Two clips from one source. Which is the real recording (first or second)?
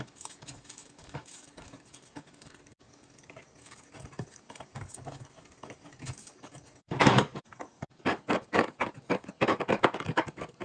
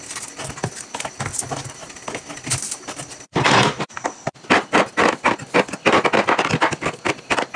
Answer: second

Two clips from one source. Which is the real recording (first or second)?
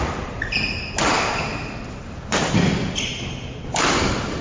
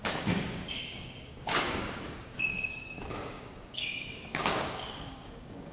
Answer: first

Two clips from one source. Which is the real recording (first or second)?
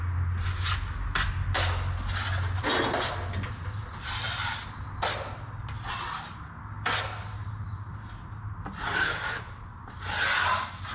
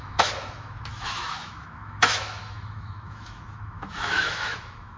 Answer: first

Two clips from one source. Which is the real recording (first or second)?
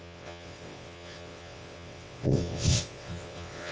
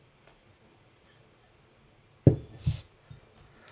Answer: second